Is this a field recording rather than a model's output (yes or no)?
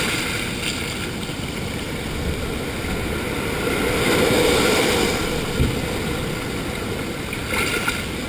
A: yes